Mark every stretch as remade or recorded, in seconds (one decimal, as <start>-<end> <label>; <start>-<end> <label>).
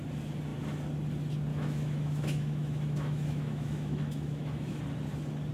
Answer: 0.0-1.5 recorded; 1.5-4.8 remade; 4.8-5.5 recorded